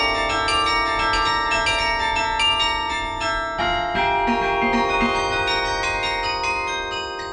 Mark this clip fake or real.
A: real